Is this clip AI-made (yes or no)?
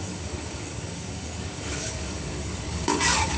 yes